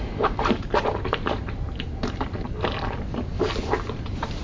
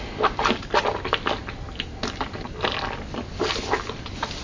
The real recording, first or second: second